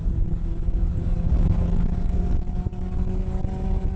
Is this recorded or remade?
remade